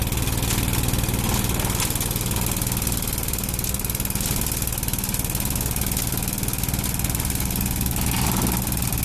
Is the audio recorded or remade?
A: recorded